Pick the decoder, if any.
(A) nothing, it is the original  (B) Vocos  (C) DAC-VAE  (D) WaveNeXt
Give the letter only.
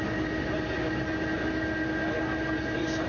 A